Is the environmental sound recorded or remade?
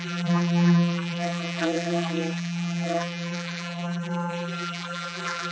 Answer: remade